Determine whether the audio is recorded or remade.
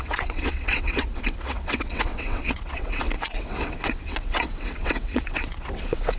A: remade